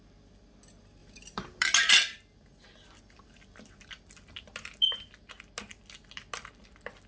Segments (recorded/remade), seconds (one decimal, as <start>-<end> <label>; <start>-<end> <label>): 0.0-7.1 recorded